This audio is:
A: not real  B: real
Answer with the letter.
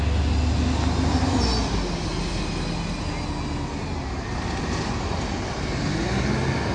B